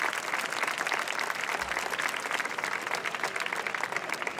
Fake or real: real